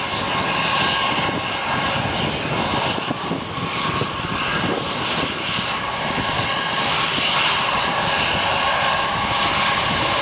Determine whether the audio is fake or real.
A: real